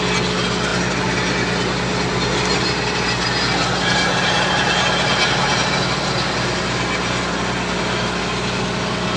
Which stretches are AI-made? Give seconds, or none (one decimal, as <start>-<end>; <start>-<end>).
none